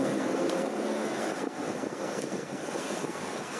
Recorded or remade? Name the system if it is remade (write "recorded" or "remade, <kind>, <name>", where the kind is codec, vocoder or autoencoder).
remade, codec, SNAC